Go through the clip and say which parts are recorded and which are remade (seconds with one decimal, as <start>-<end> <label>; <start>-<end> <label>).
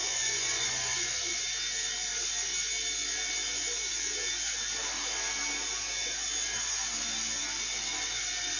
0.0-1.4 remade; 1.4-8.6 recorded